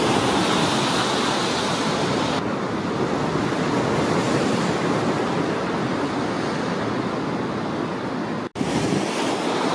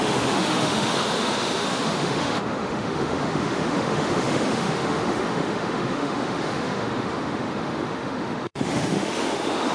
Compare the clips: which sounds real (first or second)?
first